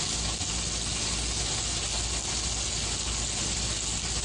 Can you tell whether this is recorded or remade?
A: recorded